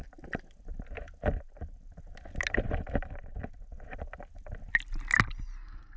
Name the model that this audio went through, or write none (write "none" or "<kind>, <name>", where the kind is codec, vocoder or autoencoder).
none